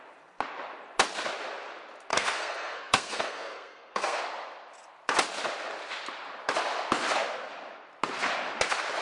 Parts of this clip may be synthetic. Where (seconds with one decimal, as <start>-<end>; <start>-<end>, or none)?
2.1-4.2